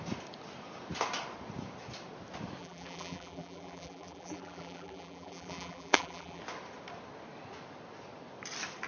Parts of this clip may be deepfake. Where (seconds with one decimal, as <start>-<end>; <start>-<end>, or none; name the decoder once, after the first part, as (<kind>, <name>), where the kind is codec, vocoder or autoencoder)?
2.6-6.4 (vocoder, BigVGAN v2)

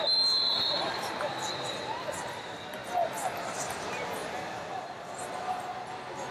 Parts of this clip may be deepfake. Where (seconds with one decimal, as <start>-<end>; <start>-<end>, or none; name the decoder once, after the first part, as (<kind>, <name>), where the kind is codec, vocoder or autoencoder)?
4.2-5.4 (vocoder, BigVGAN v2)

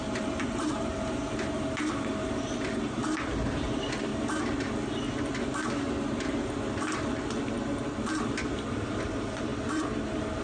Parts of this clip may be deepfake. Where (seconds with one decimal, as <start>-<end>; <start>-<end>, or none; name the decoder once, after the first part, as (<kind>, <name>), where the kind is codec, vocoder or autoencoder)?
0.0-3.0 (vocoder, BigVGAN v2); 3.5-4.1; 8.0-9.5

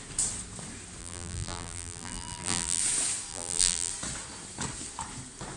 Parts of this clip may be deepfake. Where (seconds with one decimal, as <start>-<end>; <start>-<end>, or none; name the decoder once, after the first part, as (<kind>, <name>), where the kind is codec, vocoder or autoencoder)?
1.0-2.8 (vocoder, BigVGAN v2); 3.3-3.9